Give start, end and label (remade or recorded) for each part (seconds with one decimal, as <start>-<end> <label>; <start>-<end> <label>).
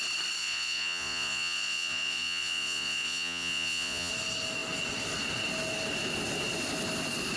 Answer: 0.0-0.4 recorded; 0.4-4.1 remade; 4.1-7.4 recorded